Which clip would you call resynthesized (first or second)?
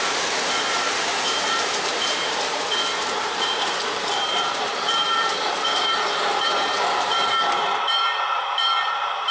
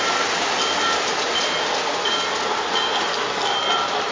first